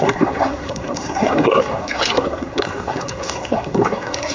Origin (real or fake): fake